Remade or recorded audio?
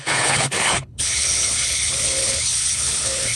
remade